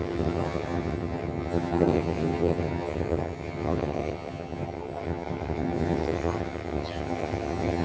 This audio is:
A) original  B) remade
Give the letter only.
B